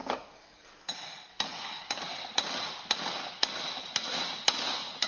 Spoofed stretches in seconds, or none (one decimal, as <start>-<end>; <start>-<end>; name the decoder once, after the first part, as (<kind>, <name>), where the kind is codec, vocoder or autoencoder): 0.0-0.9 (codec, DAC); 1.3-2.0